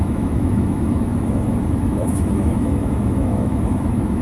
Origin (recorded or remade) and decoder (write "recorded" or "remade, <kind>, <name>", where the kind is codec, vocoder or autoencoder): remade, autoencoder, DAC-VAE